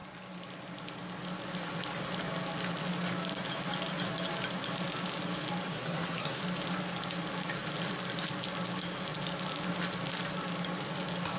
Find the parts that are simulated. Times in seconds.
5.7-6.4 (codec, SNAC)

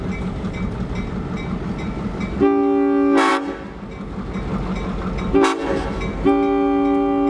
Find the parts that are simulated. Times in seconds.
none

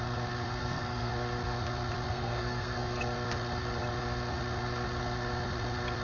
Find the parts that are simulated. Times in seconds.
0.6-1.1 (codec, SNAC); 2.1-3.0

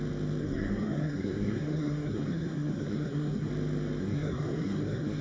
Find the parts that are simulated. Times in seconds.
0.4-3.5 (codec, SNAC); 4.0-5.2

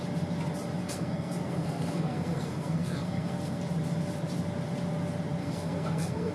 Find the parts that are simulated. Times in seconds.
0.8-3.6 (codec, SNAC); 5.4-6.3